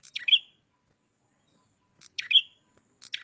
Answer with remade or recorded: recorded